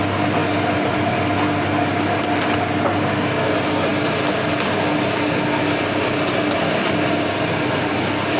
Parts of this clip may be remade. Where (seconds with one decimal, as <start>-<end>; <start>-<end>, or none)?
none